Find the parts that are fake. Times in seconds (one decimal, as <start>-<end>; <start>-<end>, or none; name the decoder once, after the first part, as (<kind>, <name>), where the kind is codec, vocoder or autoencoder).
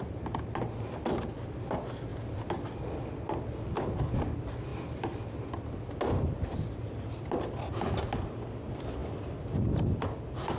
none